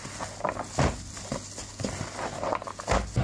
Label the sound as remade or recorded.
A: recorded